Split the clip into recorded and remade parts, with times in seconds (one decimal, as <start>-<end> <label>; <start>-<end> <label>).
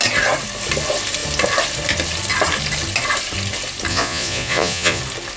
0.0-3.9 recorded; 3.9-5.0 remade; 5.0-5.4 recorded